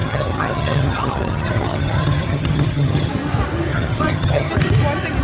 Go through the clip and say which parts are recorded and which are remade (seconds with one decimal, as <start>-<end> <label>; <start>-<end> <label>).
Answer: 0.0-3.1 remade; 3.1-3.7 recorded; 3.7-4.5 remade; 4.5-5.2 recorded